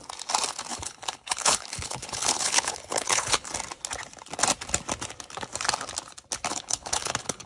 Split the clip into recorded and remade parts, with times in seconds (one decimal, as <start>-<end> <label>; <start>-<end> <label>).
0.0-0.7 recorded; 0.7-3.5 remade; 3.5-6.5 recorded; 6.5-7.5 remade